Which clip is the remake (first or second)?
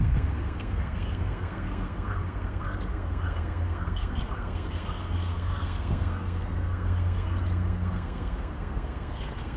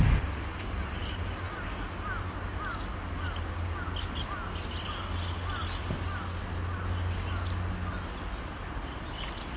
first